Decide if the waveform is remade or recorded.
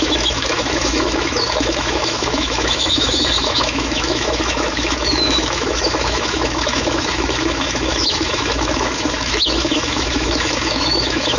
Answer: remade